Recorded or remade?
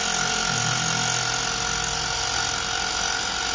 recorded